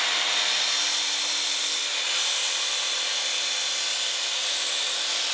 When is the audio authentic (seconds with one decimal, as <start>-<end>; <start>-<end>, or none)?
0.0-5.3